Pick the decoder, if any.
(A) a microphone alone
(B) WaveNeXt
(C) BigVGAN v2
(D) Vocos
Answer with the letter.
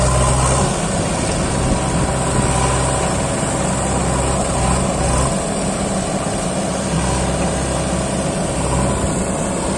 A